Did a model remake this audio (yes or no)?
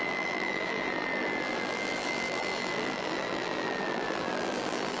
yes